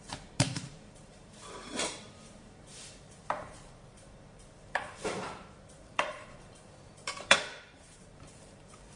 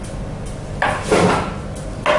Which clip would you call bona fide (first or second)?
second